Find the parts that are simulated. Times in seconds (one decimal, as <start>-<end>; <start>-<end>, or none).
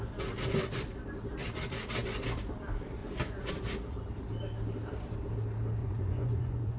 3.0-3.5; 5.8-6.8